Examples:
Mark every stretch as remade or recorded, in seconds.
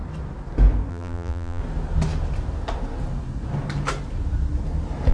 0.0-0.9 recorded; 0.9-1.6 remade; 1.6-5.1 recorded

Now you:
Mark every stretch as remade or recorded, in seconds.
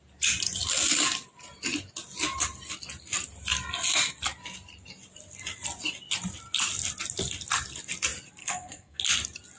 0.0-8.4 recorded; 8.4-9.0 remade; 9.0-9.6 recorded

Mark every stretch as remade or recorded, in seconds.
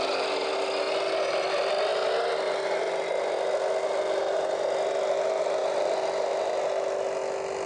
0.0-7.7 recorded